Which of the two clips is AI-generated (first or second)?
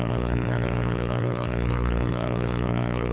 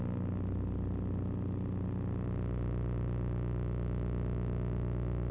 first